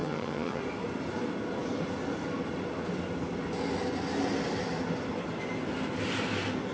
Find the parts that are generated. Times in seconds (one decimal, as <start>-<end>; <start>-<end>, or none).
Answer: 0.0-0.6